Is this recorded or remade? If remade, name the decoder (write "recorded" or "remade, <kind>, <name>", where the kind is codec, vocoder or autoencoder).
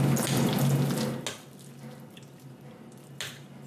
recorded